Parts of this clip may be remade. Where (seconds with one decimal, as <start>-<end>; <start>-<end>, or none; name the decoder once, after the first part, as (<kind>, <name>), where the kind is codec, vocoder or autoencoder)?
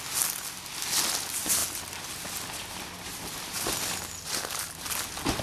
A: none